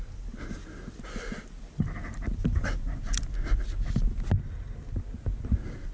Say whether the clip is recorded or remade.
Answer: recorded